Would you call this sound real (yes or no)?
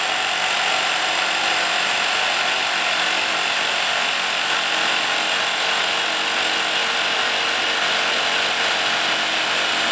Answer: yes